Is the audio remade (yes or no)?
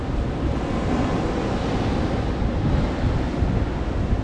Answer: no